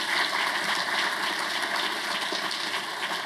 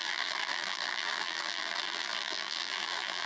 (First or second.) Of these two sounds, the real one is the first